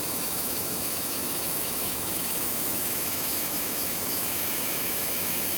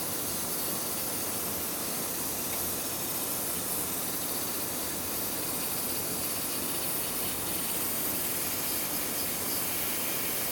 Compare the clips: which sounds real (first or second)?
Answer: second